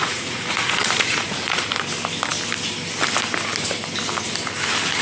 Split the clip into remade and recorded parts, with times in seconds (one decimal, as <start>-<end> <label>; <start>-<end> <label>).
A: 0.0-1.7 remade; 1.7-5.0 recorded